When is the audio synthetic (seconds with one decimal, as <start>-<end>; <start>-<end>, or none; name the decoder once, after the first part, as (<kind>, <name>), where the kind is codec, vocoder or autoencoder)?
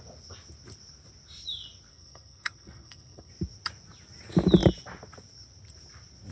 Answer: 1.9-3.3 (codec, SNAC)